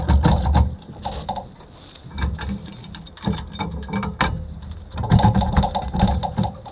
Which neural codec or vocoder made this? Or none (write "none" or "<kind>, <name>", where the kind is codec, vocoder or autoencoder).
none